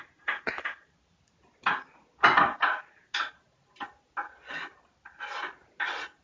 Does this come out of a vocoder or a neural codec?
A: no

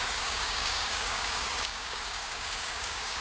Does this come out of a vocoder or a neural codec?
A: yes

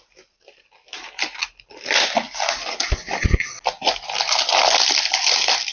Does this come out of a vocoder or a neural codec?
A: no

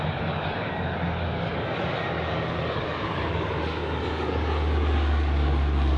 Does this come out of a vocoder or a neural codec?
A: yes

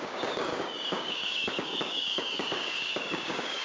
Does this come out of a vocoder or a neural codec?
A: yes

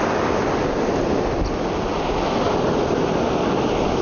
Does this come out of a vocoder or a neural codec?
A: no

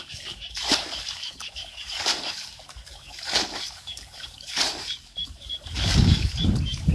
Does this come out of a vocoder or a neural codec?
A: yes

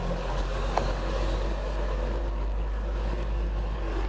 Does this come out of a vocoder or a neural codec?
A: yes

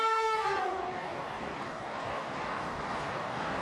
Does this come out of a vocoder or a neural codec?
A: yes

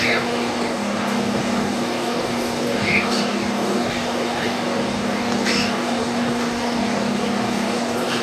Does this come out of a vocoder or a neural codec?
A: yes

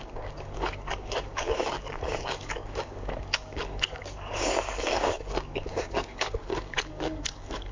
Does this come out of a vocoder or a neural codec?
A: yes